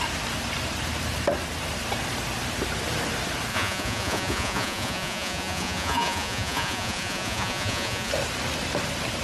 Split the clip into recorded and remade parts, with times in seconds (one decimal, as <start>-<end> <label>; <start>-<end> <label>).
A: 0.0-3.5 recorded; 3.5-8.1 remade; 8.1-9.2 recorded

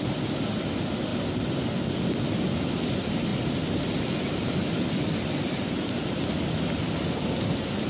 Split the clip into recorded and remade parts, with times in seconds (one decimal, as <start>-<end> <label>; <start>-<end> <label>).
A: 0.0-7.9 recorded

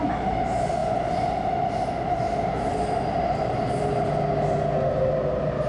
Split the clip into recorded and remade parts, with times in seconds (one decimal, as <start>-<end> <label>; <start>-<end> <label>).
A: 0.0-5.7 recorded

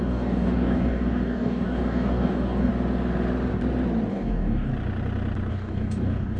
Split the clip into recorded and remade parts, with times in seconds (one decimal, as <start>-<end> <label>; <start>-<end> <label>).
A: 0.0-2.7 remade; 2.7-4.1 recorded; 4.1-4.7 remade; 4.7-5.5 recorded; 5.5-6.4 remade

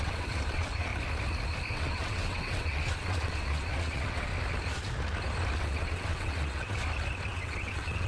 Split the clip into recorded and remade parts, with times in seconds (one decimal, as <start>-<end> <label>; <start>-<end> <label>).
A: 0.0-0.9 remade; 0.9-1.7 recorded; 1.7-4.3 remade; 4.3-5.6 recorded; 5.6-6.8 remade; 6.8-7.3 recorded; 7.3-8.1 remade

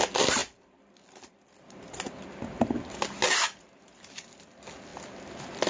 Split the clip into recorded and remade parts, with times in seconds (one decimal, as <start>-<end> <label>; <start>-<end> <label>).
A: 0.0-5.7 recorded

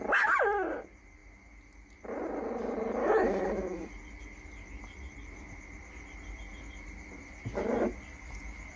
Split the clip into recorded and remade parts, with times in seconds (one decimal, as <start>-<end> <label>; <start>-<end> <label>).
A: 0.0-3.0 recorded; 3.0-3.9 remade; 3.9-8.8 recorded